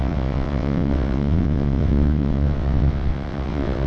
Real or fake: fake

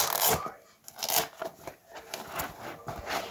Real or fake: real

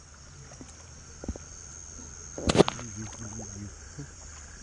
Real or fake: real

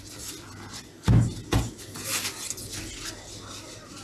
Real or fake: real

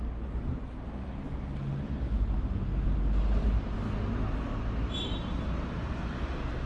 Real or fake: real